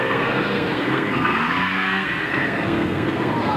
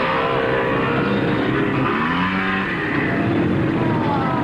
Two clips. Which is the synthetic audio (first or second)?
first